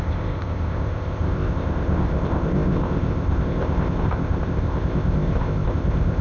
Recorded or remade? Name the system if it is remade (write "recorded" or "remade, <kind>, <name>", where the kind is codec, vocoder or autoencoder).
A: remade, codec, ZipCodec